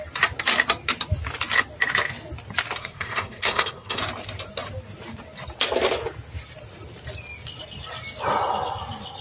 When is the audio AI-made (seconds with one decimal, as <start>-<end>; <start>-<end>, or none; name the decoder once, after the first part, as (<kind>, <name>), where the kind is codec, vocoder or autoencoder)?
2.8-4.0 (codec, SNAC)